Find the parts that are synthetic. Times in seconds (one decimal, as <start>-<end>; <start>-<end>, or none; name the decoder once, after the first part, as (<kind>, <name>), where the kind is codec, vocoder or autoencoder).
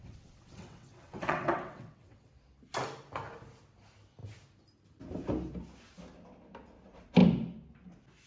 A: 0.0-2.3 (vocoder, WaveNeXt)